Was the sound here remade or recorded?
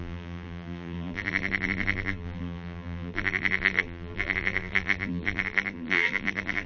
remade